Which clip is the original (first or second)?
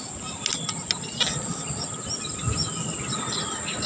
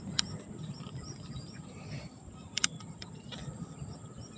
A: first